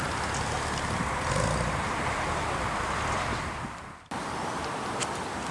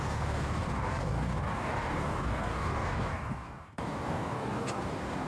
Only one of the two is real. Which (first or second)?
first